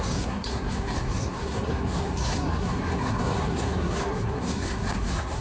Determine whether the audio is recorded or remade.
remade